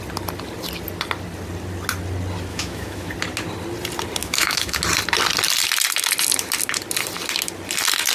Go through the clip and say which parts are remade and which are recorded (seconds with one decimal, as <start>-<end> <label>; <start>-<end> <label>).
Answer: 0.0-2.5 recorded; 2.5-3.1 remade; 3.1-4.2 recorded; 4.2-4.8 remade; 4.8-8.1 recorded